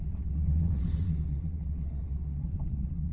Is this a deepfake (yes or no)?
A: yes